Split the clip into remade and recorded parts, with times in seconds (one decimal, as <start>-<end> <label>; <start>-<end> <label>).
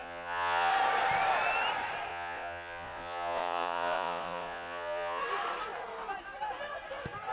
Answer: 0.0-0.7 remade; 0.7-2.1 recorded; 2.1-5.2 remade; 5.2-7.3 recorded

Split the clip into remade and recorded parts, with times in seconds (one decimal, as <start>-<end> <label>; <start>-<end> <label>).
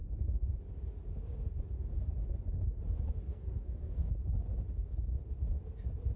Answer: 0.0-3.3 recorded; 3.3-4.1 remade; 4.1-6.2 recorded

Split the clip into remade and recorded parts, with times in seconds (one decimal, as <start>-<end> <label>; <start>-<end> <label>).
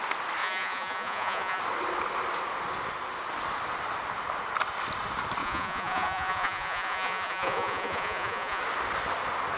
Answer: 0.0-0.4 recorded; 0.4-1.6 remade; 1.6-5.4 recorded; 5.4-8.6 remade; 8.6-9.6 recorded